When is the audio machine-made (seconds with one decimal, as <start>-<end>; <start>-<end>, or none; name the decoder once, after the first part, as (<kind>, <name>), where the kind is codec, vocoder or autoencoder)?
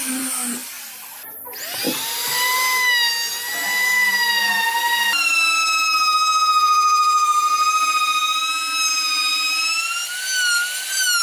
none